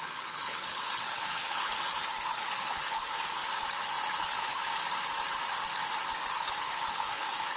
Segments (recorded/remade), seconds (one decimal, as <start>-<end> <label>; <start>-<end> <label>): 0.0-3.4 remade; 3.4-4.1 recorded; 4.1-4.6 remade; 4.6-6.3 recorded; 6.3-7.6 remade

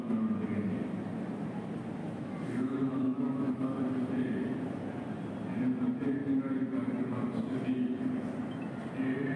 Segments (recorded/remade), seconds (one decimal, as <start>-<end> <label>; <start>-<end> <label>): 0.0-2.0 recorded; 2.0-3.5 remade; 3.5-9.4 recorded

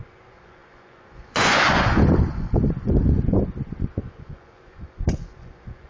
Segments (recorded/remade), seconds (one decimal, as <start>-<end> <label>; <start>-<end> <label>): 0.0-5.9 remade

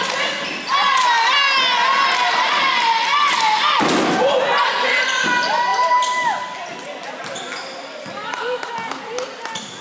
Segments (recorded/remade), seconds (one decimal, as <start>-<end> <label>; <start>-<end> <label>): 0.0-9.8 recorded

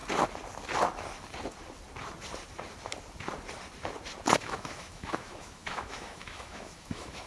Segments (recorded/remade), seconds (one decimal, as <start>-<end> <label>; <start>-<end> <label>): 0.0-4.4 recorded; 4.4-7.3 remade

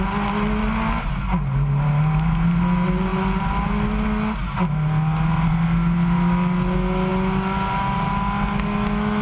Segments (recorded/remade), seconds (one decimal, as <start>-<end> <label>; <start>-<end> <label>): 0.0-9.2 recorded